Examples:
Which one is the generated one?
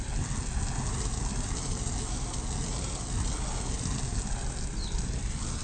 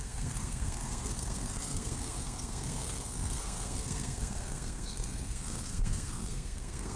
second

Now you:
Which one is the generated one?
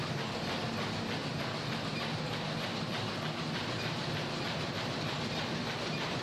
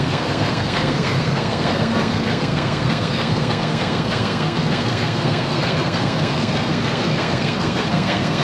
second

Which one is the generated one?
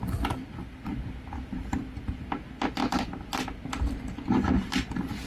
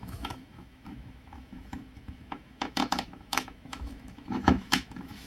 second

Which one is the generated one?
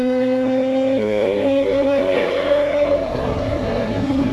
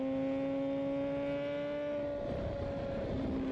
first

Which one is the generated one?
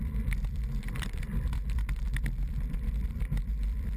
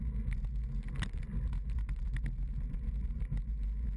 first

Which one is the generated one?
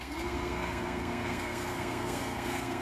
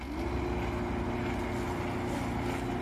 first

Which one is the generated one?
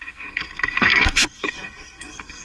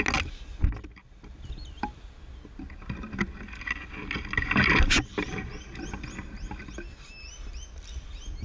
first